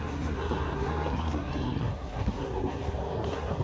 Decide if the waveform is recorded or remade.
remade